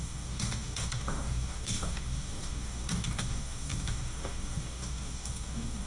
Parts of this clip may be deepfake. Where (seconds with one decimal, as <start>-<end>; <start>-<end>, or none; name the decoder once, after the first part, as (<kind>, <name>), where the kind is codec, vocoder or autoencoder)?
0.0-5.9 (codec, DAC)